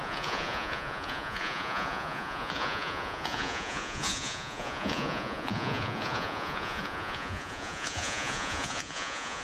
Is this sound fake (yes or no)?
yes